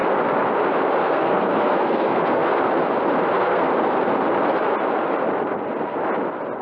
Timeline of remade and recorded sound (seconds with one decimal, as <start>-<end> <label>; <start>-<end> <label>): 0.0-1.0 recorded; 1.0-2.5 remade; 2.5-3.3 recorded; 3.3-3.7 remade; 3.7-6.6 recorded